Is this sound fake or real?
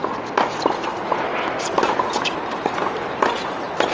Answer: real